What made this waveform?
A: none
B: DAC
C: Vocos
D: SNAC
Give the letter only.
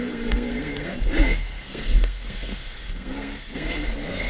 D